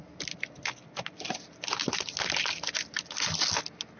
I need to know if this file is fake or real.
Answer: real